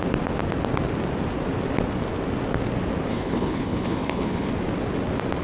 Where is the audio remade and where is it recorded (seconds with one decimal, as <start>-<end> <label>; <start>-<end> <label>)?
0.0-3.1 recorded; 3.1-4.5 remade; 4.5-5.4 recorded